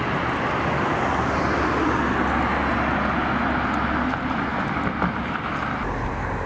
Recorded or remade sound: recorded